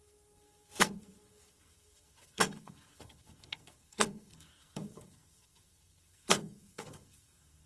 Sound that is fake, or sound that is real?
fake